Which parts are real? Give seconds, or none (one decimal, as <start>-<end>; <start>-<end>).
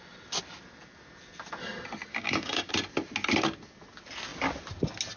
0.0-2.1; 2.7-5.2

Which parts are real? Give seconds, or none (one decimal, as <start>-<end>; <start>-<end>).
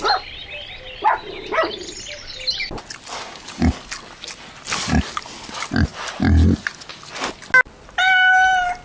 0.0-8.8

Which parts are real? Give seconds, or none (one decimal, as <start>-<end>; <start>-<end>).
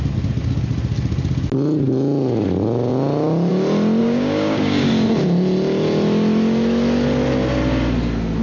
0.0-4.0; 4.9-8.4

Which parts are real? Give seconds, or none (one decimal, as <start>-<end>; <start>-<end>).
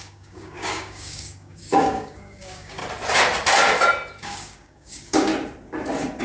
2.8-4.2; 5.3-6.2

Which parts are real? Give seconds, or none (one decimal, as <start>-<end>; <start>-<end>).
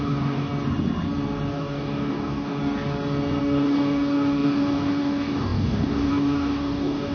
0.5-1.5; 2.6-3.4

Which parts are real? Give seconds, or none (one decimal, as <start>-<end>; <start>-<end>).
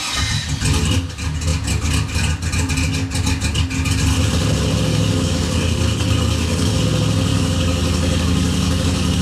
0.0-4.9; 6.8-7.3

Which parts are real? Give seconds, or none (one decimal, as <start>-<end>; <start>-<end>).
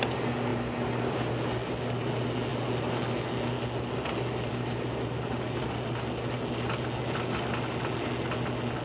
0.0-8.8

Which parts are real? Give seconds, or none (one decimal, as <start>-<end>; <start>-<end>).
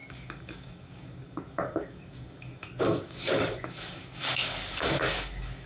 none